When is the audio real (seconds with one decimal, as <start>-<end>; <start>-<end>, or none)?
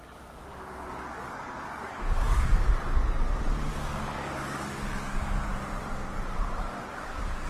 2.5-3.7; 5.5-6.6